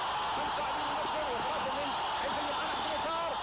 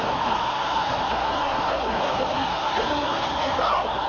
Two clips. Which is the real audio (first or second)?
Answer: first